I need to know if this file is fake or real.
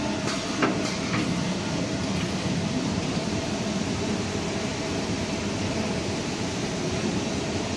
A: real